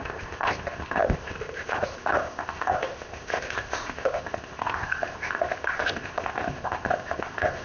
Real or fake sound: fake